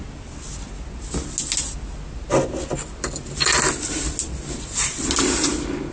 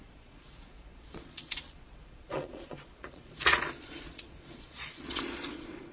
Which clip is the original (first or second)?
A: first